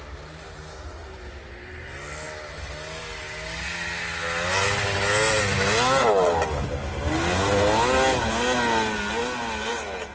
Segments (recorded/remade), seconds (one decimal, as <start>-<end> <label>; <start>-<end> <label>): 0.0-10.1 recorded